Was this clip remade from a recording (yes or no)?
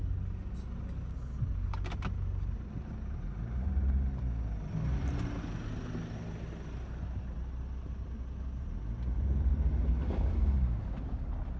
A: no